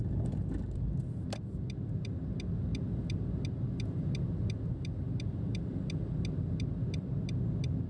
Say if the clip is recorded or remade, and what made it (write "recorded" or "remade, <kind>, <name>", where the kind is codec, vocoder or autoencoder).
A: recorded